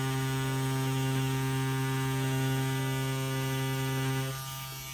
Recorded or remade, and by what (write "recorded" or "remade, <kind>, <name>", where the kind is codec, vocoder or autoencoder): recorded